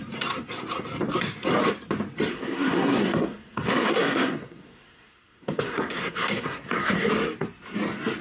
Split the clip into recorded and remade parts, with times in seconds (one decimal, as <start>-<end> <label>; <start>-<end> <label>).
0.0-2.3 recorded; 2.3-7.1 remade; 7.1-8.2 recorded